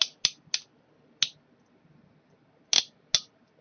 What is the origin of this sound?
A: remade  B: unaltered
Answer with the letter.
B